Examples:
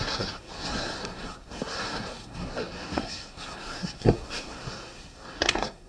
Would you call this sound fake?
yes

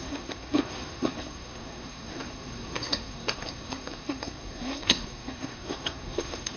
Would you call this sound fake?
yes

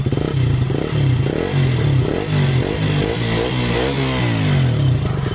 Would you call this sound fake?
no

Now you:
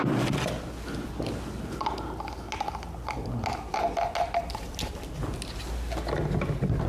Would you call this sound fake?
no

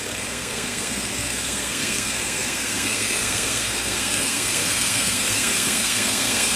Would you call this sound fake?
yes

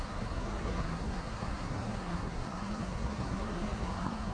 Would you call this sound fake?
yes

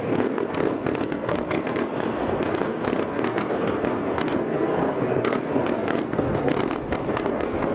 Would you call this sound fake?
yes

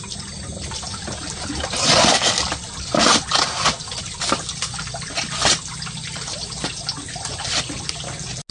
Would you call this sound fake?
no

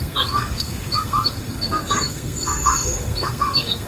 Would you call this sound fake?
yes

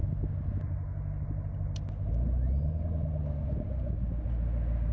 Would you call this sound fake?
no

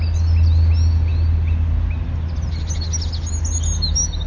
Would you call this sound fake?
no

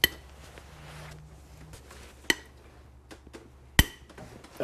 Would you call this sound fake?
no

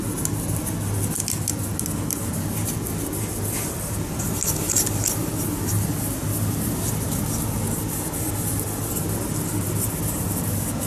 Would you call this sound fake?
no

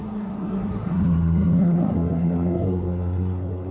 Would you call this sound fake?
yes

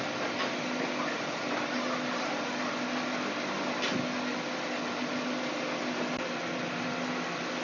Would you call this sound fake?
no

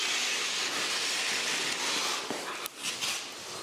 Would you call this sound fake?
no